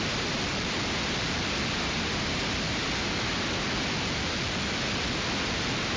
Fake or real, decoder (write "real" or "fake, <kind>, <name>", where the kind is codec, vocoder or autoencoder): real